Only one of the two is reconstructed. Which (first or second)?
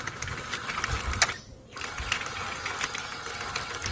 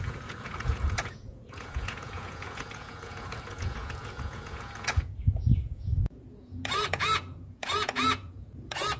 second